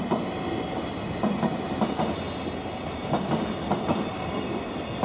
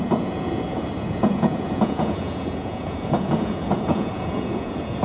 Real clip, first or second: first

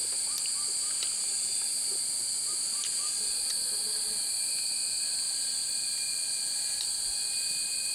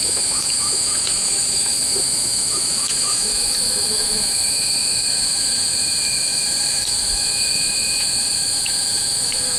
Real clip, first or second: first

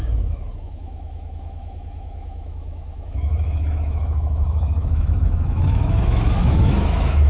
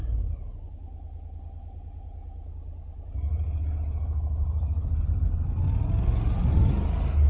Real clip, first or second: second